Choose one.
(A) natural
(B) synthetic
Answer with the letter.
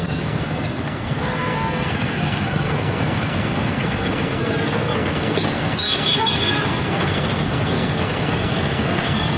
B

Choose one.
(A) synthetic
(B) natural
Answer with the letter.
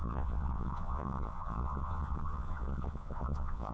A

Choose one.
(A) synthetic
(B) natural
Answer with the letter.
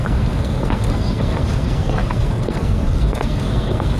A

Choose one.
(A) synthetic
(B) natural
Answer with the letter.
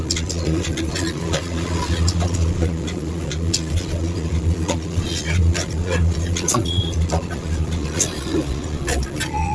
A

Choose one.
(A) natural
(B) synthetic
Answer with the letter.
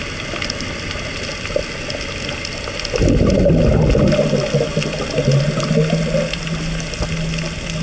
A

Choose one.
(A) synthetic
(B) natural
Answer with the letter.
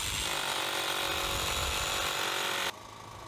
B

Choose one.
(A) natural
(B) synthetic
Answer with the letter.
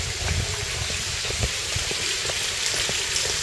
B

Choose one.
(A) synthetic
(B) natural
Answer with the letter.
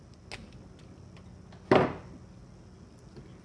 B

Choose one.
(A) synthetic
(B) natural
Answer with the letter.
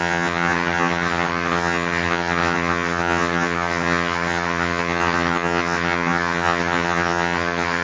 A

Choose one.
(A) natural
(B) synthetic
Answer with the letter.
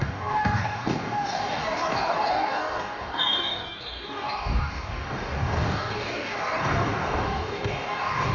B